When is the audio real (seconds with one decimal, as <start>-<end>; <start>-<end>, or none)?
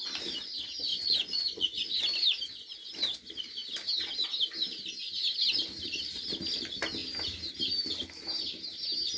0.0-0.9; 1.9-9.2